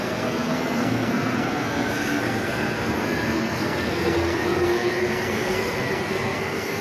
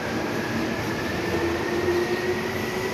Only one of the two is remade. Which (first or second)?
first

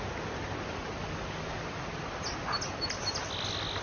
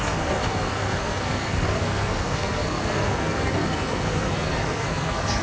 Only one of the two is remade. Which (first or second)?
second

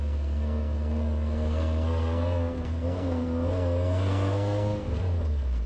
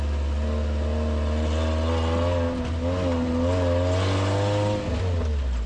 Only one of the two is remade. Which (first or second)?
first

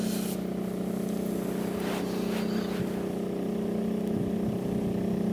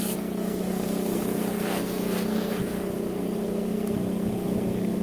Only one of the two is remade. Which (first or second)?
second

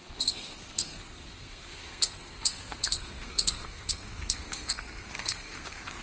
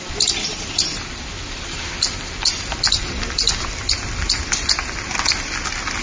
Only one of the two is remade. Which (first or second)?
first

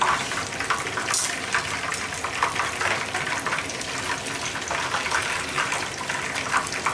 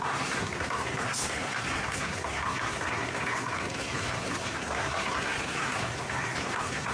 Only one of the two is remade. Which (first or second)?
second